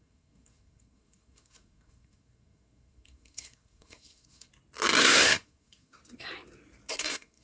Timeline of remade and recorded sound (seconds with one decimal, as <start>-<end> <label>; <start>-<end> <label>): 0.0-4.5 remade; 4.5-5.0 recorded; 5.0-6.0 remade; 6.0-6.9 recorded; 6.9-7.4 remade